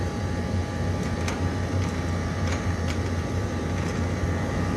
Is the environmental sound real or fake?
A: fake